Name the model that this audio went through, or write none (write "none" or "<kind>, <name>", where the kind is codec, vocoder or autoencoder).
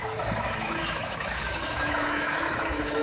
autoencoder, DAC-VAE